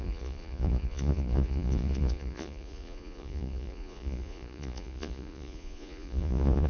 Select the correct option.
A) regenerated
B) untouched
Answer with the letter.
A